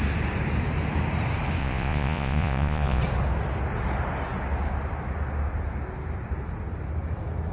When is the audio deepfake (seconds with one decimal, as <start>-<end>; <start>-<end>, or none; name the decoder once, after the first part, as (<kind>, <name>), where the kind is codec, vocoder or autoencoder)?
1.6-3.0 (vocoder, Vocos)